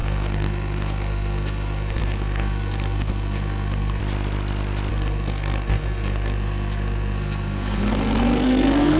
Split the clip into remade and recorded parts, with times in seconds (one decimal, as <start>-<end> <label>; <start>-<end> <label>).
0.0-4.0 remade; 4.0-4.9 recorded; 4.9-9.0 remade